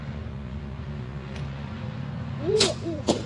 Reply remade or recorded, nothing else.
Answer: remade